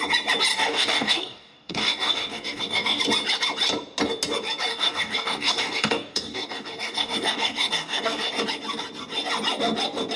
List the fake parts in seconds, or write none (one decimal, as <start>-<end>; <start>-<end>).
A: 0.5-3.0; 4.7-8.3